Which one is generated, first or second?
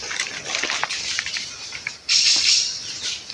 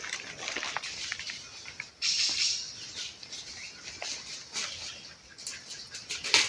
first